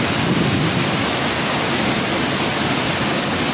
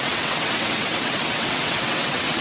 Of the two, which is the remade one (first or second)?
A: second